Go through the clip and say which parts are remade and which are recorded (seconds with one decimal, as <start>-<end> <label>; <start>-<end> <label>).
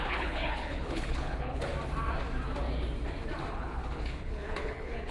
0.0-1.7 remade; 1.7-3.5 recorded; 3.5-5.1 remade